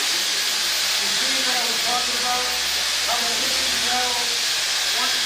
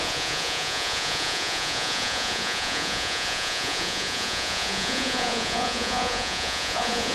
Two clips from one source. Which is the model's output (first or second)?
second